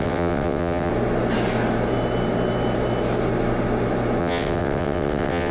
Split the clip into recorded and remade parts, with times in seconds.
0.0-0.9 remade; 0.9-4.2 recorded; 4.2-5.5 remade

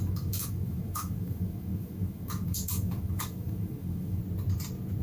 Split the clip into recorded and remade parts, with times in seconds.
0.0-4.2 remade; 4.2-5.0 recorded

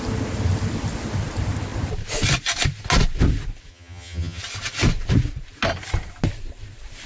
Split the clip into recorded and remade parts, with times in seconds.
0.0-3.7 recorded; 3.7-4.4 remade; 4.4-7.1 recorded

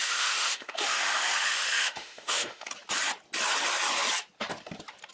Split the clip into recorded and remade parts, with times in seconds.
0.0-2.7 remade; 2.7-5.1 recorded